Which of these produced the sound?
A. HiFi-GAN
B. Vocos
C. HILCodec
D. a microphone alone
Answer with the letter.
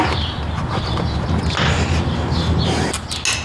D